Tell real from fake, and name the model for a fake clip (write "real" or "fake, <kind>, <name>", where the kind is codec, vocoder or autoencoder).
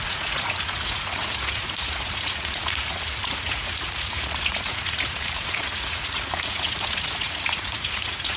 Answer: fake, vocoder, Vocos